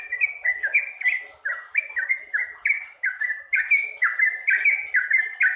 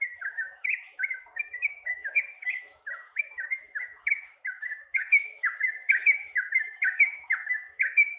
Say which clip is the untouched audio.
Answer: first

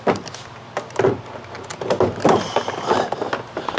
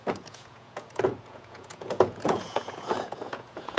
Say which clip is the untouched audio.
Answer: first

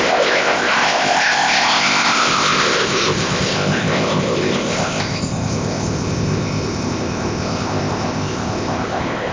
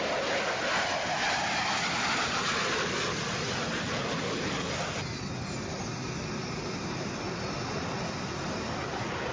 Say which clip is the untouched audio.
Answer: second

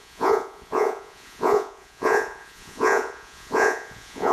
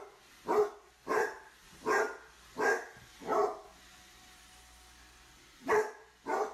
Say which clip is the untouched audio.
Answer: second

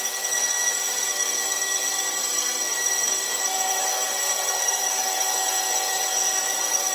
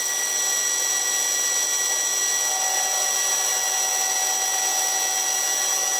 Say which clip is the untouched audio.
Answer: second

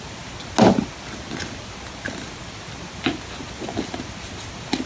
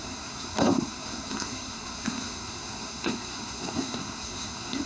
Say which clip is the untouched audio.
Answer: first